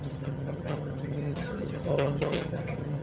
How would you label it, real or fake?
fake